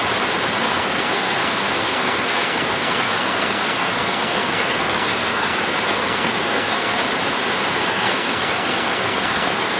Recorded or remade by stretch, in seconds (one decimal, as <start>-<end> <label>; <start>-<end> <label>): 0.0-0.6 recorded; 0.6-7.0 remade; 7.0-7.8 recorded; 7.8-9.8 remade